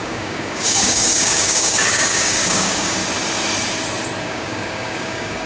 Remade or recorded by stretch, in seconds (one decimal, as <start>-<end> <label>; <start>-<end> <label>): 0.0-3.0 remade; 3.0-4.2 recorded; 4.2-5.5 remade